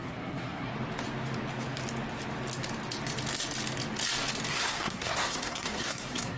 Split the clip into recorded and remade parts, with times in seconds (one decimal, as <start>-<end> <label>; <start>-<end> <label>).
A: 0.0-0.7 remade; 0.7-4.5 recorded; 4.5-6.4 remade